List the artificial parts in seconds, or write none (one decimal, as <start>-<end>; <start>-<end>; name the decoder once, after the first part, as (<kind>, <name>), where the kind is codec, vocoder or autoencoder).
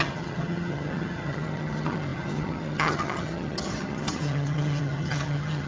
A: 0.0-5.7 (vocoder, HiFi-GAN)